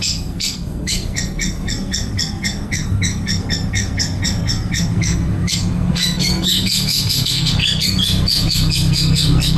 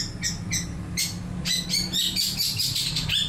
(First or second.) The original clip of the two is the second